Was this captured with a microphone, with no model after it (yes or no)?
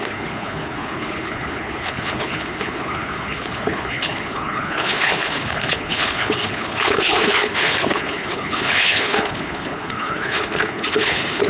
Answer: no